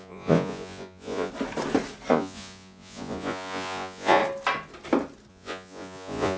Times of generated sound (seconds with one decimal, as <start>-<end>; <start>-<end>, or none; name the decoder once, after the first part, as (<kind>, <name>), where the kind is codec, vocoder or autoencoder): 0.0-1.3 (vocoder, Vocos); 2.1-4.2; 5.3-6.4